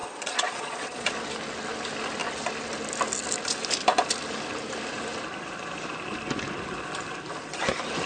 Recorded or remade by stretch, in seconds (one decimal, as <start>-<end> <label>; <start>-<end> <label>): 0.0-1.1 remade; 1.1-8.1 recorded